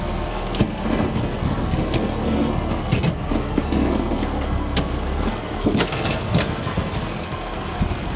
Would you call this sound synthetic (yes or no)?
yes